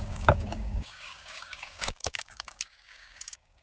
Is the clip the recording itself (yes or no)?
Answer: no